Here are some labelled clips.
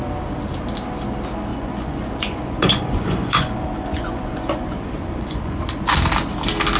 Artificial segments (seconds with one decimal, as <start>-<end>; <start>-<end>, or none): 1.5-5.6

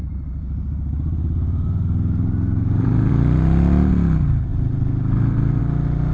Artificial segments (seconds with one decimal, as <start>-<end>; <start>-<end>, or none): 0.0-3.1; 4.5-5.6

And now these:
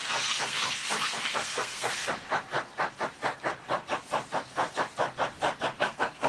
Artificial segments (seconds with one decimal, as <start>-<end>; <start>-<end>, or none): 0.0-2.0; 5.8-6.3

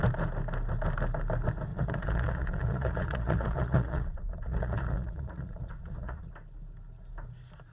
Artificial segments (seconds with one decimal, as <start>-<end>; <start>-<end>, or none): 1.7-6.3

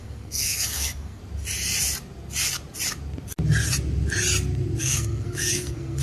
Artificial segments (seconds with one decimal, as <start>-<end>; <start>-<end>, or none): 0.0-1.2; 4.8-6.0

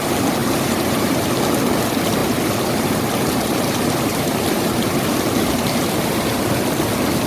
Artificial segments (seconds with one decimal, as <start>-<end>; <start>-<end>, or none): 0.4-1.3; 2.2-6.6

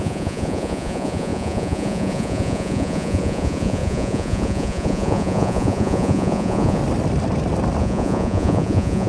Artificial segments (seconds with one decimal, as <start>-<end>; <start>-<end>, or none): 0.0-6.8; 7.8-9.1